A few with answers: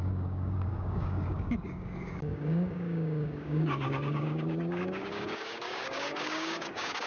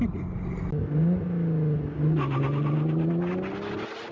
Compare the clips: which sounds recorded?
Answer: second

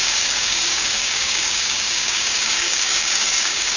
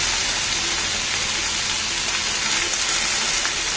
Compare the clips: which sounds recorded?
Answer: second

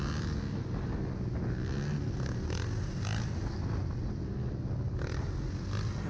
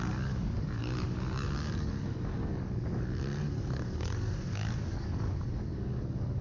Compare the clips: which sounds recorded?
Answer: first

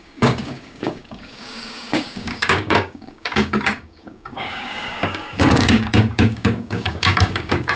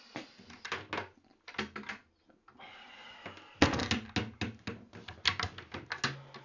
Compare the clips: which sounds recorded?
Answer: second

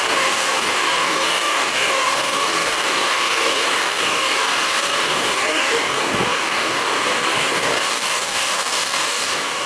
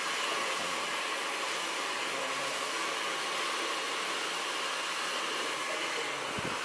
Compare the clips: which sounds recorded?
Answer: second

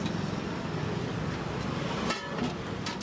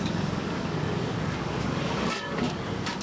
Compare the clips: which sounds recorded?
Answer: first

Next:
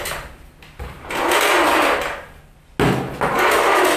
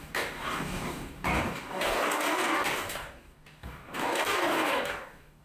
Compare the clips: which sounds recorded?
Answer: first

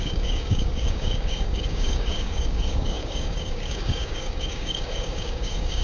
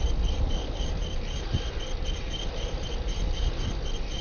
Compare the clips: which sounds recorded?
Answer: second